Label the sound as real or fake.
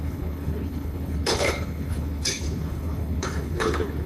fake